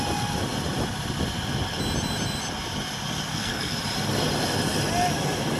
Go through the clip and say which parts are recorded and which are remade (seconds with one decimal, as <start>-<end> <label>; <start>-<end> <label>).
0.0-3.3 recorded; 3.3-3.8 remade; 3.8-5.6 recorded